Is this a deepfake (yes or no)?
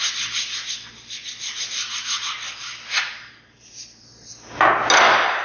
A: no